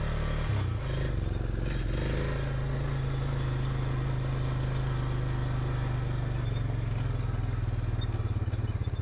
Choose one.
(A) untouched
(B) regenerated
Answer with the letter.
A